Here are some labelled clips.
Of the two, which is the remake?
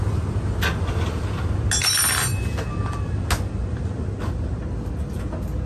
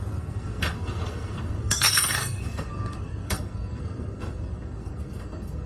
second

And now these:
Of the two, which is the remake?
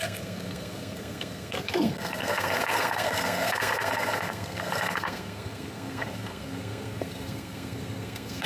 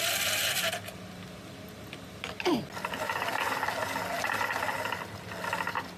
first